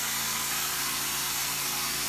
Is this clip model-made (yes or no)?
yes